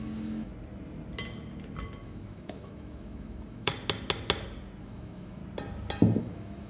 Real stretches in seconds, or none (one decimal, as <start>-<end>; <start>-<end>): 0.5-2.0; 3.7-4.8; 5.4-6.2